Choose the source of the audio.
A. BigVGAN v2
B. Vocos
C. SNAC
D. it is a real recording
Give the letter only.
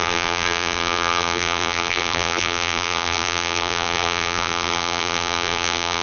A